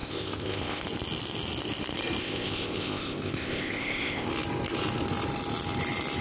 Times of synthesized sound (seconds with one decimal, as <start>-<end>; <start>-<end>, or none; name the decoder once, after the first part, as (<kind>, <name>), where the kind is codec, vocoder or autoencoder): 0.0-0.8 (codec, ZipCodec); 2.2-4.3